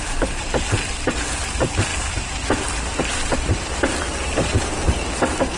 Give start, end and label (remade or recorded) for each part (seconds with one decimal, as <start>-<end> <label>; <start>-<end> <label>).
0.0-5.6 recorded